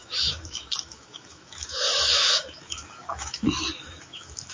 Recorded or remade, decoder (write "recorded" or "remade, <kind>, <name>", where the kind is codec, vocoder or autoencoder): remade, autoencoder, DAC-VAE